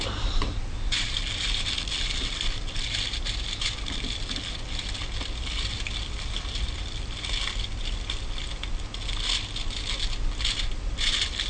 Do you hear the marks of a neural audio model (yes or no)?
no